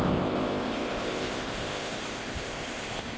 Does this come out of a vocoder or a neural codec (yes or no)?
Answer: yes